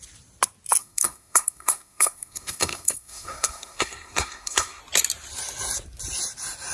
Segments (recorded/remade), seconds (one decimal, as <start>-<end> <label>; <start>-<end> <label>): 0.0-0.8 recorded; 0.8-4.8 remade; 4.8-6.7 recorded